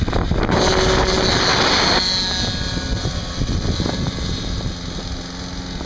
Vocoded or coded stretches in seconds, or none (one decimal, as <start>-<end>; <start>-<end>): none